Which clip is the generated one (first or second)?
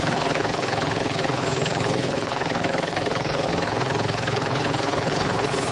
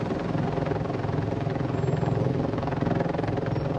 first